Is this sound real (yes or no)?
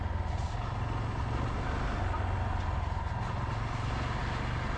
yes